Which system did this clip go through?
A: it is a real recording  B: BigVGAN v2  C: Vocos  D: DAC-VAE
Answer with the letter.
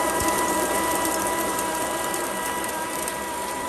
B